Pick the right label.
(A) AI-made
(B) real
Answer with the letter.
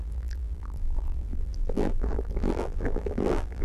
A